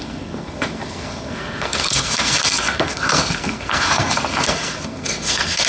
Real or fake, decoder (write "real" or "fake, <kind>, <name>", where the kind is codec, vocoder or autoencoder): fake, codec, SNAC